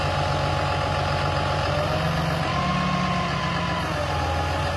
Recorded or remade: recorded